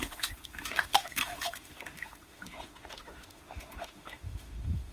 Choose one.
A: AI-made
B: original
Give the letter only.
A